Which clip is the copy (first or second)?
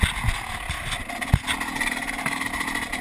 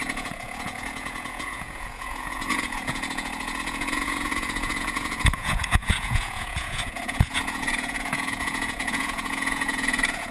second